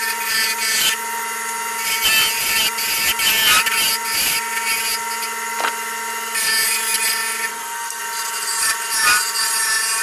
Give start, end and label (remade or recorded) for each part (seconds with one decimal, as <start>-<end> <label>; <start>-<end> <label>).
0.0-7.5 recorded; 7.5-8.0 remade; 8.0-10.0 recorded